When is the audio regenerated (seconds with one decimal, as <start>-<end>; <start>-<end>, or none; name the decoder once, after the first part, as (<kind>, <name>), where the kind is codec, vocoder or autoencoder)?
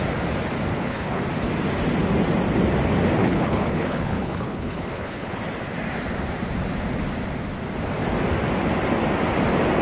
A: 0.7-1.2 (codec, HILCodec); 3.2-5.4